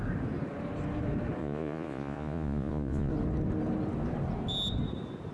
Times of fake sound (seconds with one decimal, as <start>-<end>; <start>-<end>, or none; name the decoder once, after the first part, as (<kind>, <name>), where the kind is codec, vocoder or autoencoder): 1.4-3.1 (vocoder, Vocos)